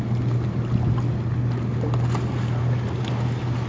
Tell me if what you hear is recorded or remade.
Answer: recorded